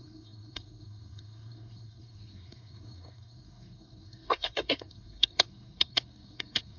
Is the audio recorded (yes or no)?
no